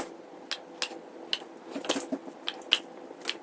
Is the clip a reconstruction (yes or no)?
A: no